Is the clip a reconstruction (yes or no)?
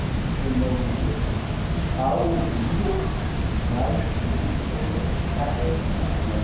no